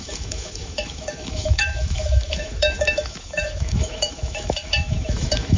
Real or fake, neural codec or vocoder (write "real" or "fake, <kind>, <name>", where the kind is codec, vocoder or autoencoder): fake, autoencoder, DAC-VAE